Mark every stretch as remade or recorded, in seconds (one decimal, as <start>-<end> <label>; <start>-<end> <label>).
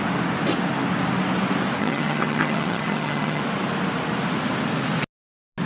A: 0.0-1.8 recorded; 1.8-3.4 remade; 3.4-5.7 recorded